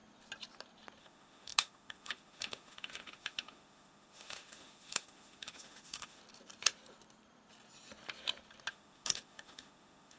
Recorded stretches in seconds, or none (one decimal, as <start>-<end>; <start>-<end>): 0.0-1.0; 6.2-8.7